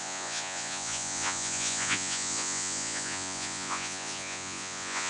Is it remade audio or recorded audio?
remade